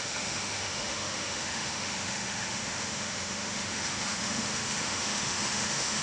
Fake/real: fake